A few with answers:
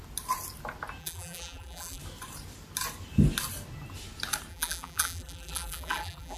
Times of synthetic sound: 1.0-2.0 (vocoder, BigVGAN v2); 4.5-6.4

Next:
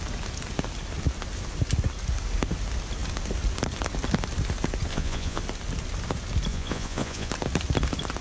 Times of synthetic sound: 4.9-5.4 (vocoder, Vocos); 6.5-7.3

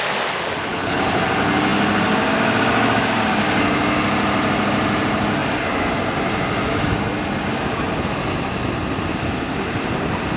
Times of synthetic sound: 0.7-1.2 (codec, HILCodec)

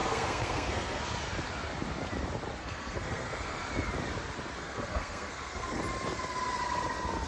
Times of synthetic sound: 0.0-1.0 (codec, SNAC); 2.6-3.6; 4.6-5.8

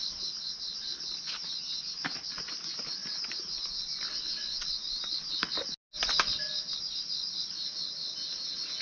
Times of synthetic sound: none

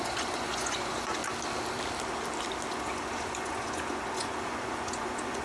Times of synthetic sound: 0.0-1.2 (vocoder, Vocos); 2.7-5.4

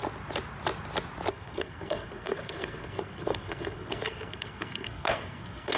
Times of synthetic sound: 1.3-5.8 (codec, SNAC)

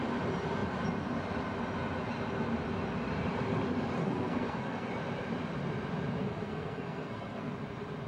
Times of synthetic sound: 4.0-4.9 (codec, SNAC); 6.2-7.5